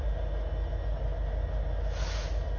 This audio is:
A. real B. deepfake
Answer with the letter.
A